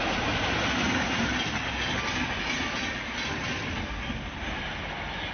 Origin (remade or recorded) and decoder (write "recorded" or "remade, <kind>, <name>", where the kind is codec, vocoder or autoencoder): recorded